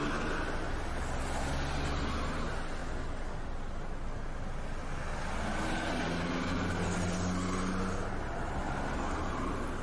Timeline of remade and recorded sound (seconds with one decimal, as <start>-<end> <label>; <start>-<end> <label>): 0.0-9.8 recorded